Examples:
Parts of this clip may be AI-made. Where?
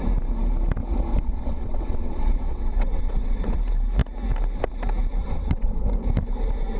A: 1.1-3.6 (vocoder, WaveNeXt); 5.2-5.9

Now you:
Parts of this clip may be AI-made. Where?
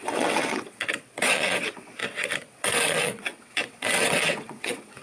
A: 0.0-5.0 (vocoder, WaveNeXt)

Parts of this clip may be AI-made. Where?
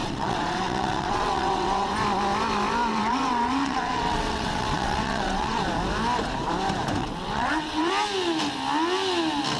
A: 0.0-1.9 (vocoder, WaveNeXt); 2.9-5.6; 7.0-7.9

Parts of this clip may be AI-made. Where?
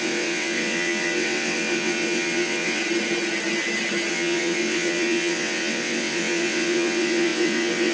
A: 0.0-2.8 (vocoder, WaveNeXt); 4.1-7.9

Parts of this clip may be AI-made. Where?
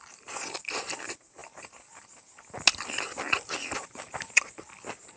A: none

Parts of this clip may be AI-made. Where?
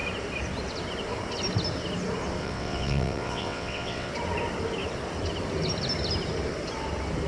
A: 2.4-4.1 (vocoder, WaveNeXt)